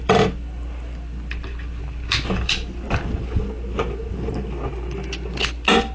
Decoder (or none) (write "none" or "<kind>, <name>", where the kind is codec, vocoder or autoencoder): none